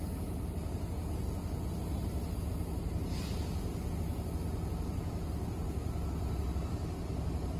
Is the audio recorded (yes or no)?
yes